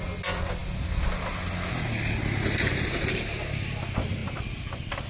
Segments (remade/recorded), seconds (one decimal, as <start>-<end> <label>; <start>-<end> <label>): 0.0-5.1 recorded